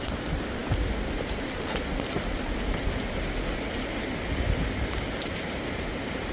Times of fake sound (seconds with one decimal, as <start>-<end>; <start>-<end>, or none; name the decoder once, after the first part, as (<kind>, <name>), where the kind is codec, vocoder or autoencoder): none